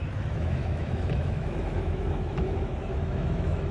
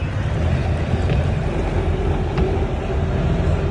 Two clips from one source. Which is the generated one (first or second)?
first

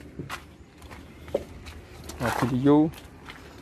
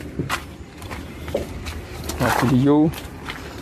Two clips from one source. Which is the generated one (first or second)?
second